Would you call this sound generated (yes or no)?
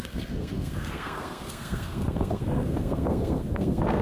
yes